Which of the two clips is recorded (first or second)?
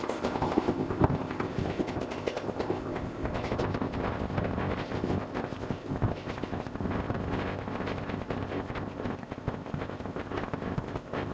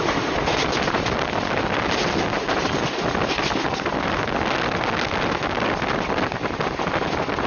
second